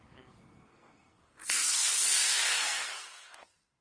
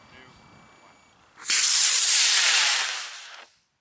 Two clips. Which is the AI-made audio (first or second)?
first